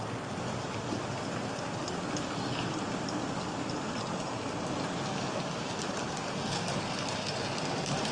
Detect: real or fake real